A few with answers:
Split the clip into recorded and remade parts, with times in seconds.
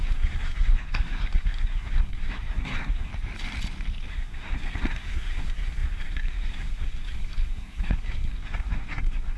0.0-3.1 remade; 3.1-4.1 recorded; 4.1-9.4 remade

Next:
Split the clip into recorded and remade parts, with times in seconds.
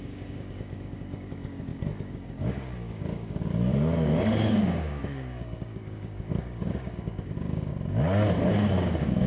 0.0-7.7 remade; 7.7-8.5 recorded; 8.5-9.3 remade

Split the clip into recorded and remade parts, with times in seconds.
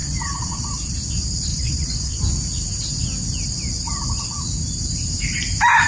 0.0-0.9 remade; 0.9-1.5 recorded; 1.5-2.2 remade; 2.2-5.9 recorded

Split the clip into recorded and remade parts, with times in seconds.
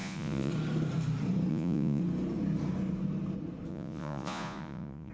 0.0-0.5 remade; 0.5-1.5 recorded; 1.5-2.0 remade; 2.0-3.7 recorded; 3.7-5.1 remade